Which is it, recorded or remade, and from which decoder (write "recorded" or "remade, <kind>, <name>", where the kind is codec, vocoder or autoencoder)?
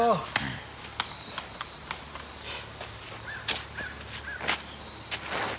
recorded